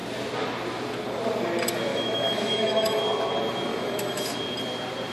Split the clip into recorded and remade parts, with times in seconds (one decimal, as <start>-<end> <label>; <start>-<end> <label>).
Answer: 0.0-1.9 recorded; 1.9-3.0 remade; 3.0-3.7 recorded; 3.7-4.3 remade; 4.3-5.1 recorded